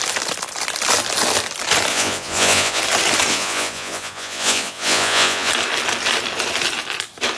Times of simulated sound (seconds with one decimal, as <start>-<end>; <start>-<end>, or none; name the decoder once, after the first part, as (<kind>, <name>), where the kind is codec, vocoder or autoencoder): 1.9-2.8 (vocoder, Vocos); 3.3-5.5